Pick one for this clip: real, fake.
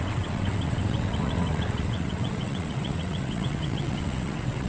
fake